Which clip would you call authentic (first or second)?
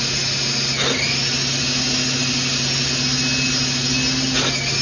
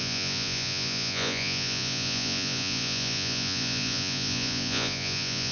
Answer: first